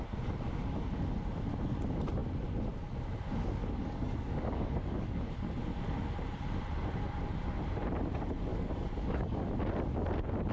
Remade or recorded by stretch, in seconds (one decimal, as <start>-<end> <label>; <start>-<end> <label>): 0.0-3.6 recorded; 3.6-5.3 remade; 5.3-8.5 recorded; 8.5-9.5 remade; 9.5-10.5 recorded